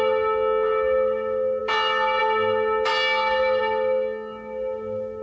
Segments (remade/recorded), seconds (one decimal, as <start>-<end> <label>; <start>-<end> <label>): 0.0-5.2 recorded